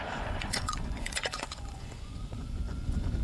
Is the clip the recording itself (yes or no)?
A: no